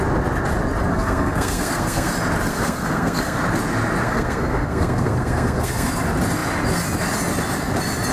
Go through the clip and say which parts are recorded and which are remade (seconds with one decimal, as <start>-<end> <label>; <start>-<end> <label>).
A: 0.0-0.9 recorded; 0.9-2.1 remade; 2.1-2.5 recorded; 2.5-3.4 remade; 3.4-4.0 recorded; 4.0-5.9 remade; 5.9-8.1 recorded